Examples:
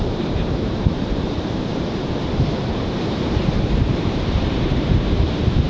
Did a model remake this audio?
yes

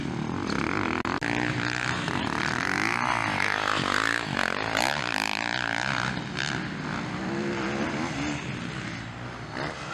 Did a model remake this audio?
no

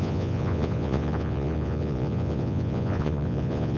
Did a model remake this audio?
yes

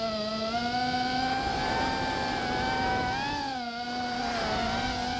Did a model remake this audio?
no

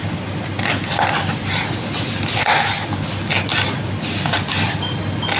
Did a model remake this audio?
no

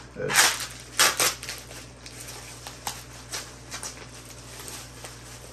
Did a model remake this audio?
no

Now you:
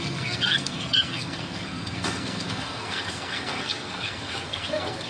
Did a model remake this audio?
yes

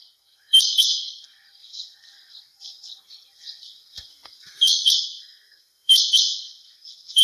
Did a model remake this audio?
yes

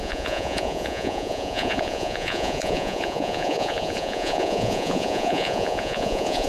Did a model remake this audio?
yes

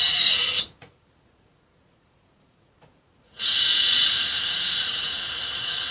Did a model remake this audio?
yes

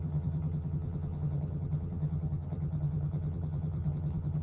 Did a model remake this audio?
yes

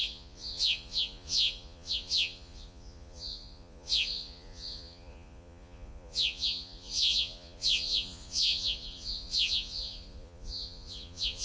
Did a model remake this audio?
yes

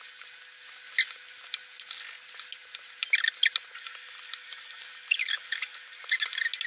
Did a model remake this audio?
no